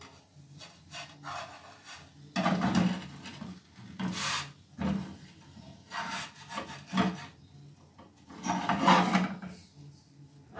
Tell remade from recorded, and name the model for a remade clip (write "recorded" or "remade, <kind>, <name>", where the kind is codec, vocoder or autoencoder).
recorded